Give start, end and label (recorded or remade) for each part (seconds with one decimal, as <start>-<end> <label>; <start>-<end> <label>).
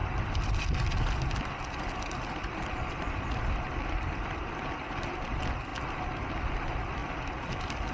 0.0-7.9 recorded